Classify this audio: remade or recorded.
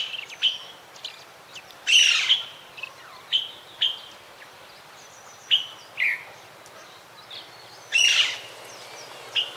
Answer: recorded